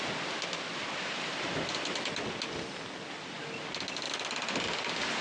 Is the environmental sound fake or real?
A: real